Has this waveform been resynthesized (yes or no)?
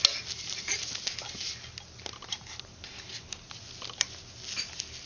no